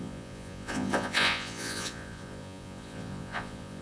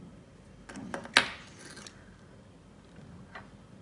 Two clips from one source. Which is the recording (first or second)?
second